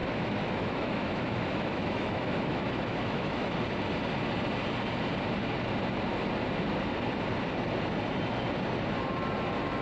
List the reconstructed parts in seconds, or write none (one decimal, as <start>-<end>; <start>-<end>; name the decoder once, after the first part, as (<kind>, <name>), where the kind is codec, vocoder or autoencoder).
0.0-3.5 (autoencoder, DAC-VAE)